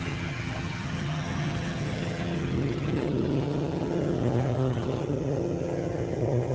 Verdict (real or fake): fake